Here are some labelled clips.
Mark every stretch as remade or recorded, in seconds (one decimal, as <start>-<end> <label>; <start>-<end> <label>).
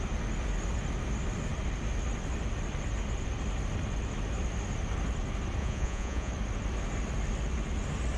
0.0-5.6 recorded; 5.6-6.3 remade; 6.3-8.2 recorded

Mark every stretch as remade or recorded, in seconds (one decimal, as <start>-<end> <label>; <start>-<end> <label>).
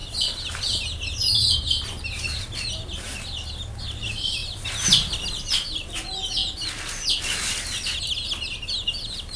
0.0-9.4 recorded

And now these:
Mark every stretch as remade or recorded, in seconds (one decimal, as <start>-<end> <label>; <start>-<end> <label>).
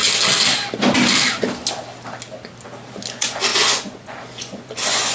0.0-3.1 recorded; 3.1-5.1 remade